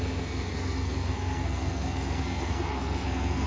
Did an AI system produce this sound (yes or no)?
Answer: yes